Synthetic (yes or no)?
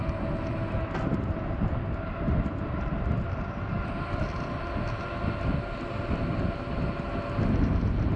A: no